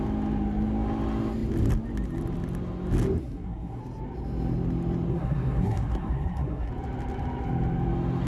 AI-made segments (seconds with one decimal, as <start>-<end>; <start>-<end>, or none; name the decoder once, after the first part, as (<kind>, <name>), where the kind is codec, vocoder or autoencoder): 3.2-3.8 (codec, SNAC); 5.1-6.7